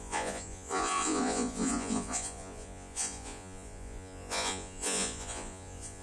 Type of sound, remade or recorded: remade